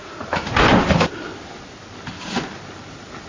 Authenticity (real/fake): real